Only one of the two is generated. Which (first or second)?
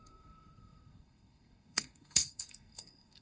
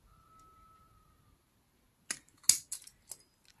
first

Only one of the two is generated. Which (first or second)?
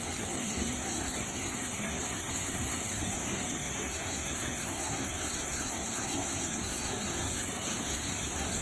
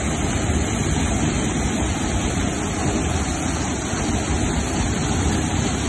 first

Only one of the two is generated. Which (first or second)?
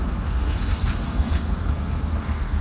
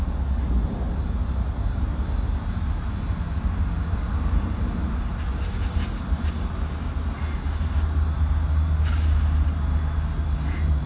first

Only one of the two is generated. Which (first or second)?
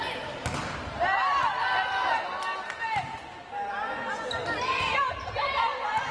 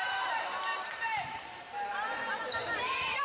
second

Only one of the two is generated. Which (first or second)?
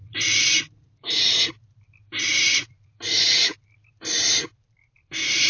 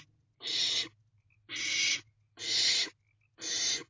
first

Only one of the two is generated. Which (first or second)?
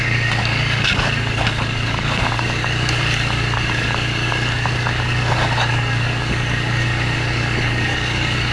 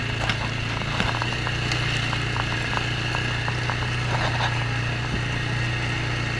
first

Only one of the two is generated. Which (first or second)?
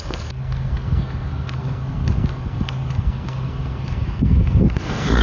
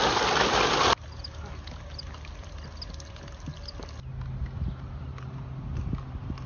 first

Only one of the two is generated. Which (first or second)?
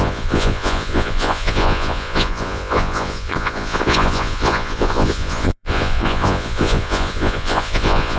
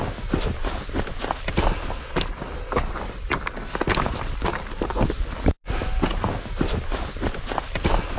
first